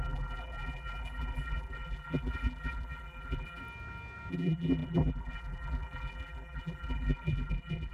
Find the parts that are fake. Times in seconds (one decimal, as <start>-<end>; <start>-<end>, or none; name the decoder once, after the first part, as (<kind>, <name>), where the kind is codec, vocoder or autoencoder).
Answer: 0.0-3.6 (vocoder, BigVGAN v2); 4.3-7.9